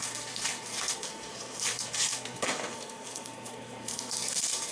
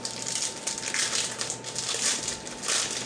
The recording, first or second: second